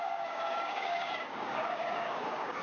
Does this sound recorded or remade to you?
remade